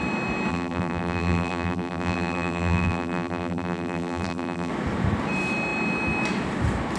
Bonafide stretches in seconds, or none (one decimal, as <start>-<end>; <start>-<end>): 0.0-0.5; 4.7-7.0